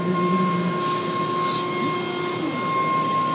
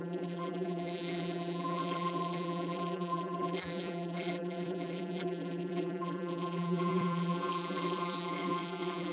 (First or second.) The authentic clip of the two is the first